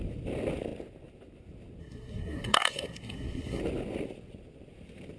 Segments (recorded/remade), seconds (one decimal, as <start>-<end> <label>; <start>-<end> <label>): 0.0-1.8 recorded; 1.8-3.6 remade; 3.6-5.2 recorded